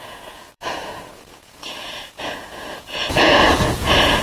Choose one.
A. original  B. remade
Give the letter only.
B